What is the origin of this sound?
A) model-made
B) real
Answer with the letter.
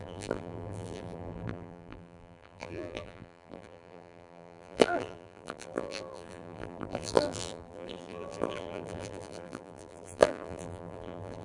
A